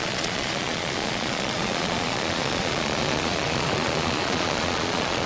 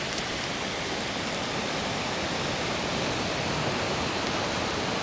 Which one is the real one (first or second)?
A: second